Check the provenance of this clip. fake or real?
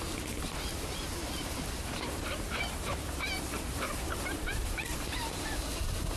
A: fake